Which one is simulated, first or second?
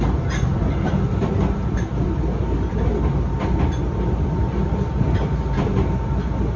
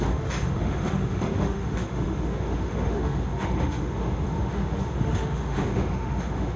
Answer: second